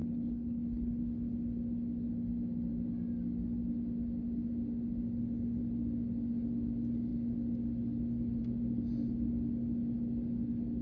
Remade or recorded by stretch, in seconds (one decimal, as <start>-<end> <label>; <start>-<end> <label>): 0.0-1.0 remade; 1.0-10.8 recorded